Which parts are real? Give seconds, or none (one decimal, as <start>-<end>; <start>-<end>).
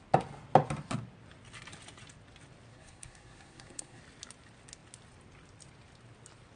0.0-2.7; 4.0-6.6